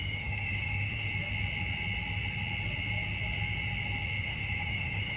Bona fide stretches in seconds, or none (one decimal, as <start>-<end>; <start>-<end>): 1.1-4.2